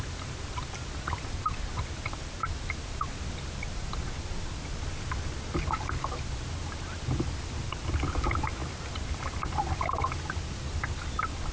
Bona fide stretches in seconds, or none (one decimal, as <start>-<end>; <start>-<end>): 0.0-11.5